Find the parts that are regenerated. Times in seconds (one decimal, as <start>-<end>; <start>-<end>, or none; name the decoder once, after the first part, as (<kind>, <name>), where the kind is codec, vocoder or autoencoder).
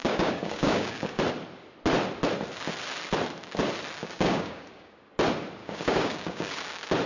0.0-1.2 (codec, DAC); 4.0-5.1; 5.6-6.5